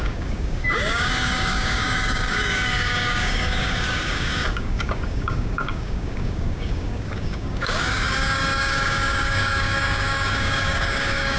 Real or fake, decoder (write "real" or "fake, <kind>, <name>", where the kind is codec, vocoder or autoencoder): fake, codec, DAC